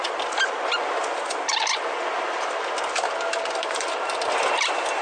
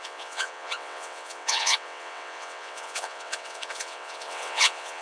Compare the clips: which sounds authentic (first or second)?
first